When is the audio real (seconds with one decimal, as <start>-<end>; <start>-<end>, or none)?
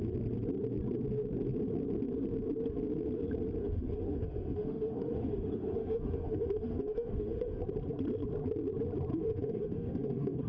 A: 0.0-3.6; 7.6-9.1